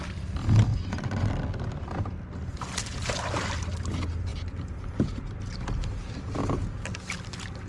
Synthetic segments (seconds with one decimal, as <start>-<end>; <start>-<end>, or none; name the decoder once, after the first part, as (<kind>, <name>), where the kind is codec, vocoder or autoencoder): 0.7-1.3 (vocoder, Vocos)